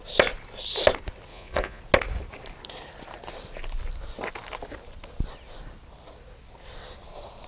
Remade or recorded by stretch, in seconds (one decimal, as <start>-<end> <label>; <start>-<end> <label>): 0.0-1.3 recorded; 1.3-1.8 remade; 1.8-7.5 recorded